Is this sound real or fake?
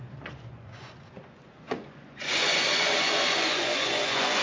fake